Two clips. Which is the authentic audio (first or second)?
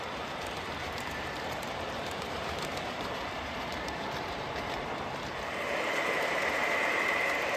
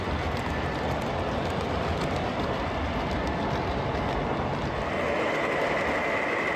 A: second